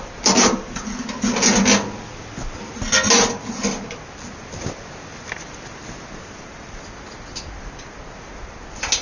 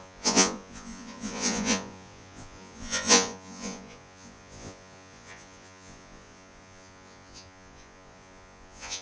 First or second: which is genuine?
first